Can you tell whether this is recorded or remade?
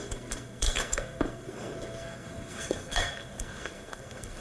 remade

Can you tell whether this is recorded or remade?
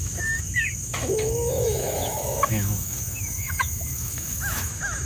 remade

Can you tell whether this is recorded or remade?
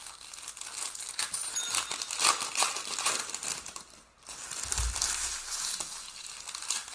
recorded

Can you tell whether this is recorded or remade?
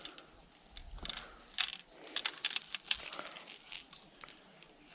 recorded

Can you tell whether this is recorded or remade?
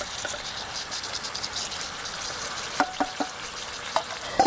recorded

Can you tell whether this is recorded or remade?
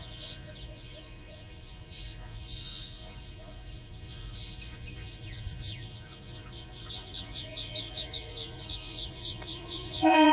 remade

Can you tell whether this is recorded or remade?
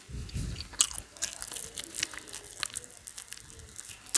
recorded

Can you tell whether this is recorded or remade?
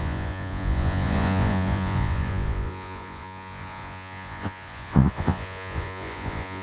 remade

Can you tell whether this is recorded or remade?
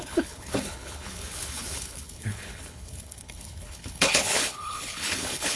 remade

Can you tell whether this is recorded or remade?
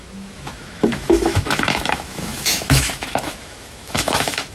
remade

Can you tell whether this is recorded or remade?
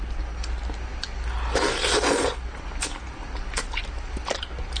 recorded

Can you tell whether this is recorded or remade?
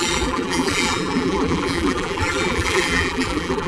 remade